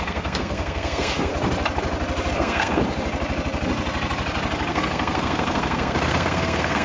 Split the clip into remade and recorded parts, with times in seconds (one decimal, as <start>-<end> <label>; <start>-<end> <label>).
0.0-1.3 remade; 1.3-2.3 recorded; 2.3-2.8 remade; 2.8-4.7 recorded; 4.7-6.8 remade